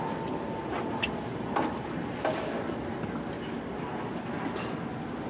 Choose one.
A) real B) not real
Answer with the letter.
A